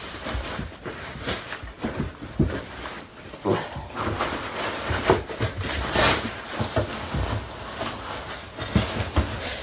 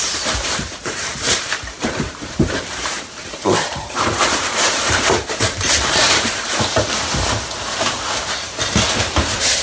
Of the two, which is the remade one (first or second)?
second